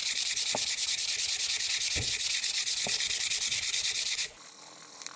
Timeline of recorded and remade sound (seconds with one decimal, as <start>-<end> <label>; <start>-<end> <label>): 0.0-2.1 remade; 2.1-5.2 recorded